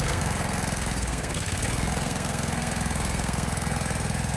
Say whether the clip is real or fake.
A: fake